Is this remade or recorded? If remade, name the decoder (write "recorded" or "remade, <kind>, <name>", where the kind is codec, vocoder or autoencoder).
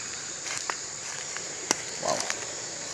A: remade, vocoder, BigVGAN v2